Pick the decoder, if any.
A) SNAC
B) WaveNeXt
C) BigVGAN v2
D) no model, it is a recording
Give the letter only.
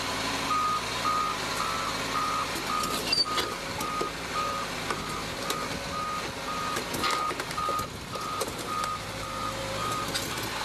D